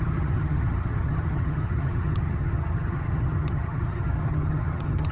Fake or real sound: fake